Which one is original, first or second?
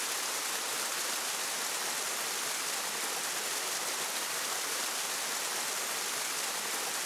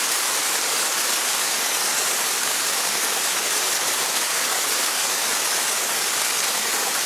first